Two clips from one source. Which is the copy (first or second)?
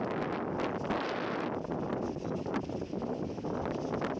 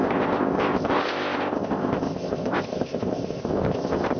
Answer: second